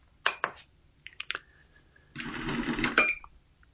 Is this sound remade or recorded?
recorded